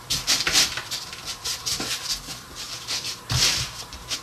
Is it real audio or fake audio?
fake